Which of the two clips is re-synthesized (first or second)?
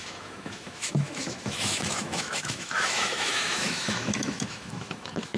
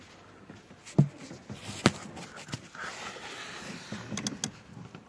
first